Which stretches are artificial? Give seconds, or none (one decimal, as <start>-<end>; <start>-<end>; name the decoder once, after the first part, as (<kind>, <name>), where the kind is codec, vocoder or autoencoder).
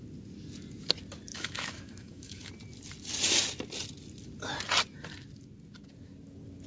1.3-2.5 (autoencoder, DAC-VAE)